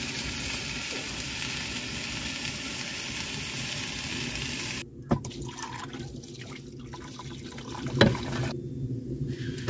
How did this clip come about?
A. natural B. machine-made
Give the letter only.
A